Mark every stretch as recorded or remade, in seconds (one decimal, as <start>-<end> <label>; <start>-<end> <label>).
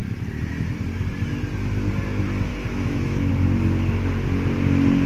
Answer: 0.0-2.5 recorded; 2.5-3.3 remade; 3.3-5.1 recorded